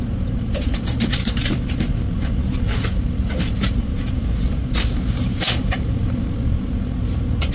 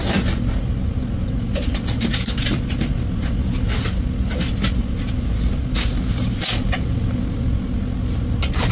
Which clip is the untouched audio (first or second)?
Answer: second